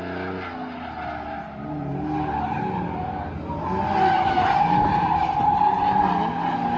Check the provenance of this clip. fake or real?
real